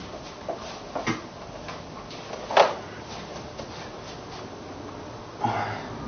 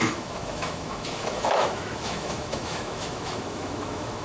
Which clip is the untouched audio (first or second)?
first